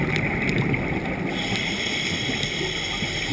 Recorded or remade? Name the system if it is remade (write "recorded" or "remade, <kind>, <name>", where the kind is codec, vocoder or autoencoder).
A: recorded